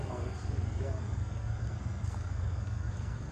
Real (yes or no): no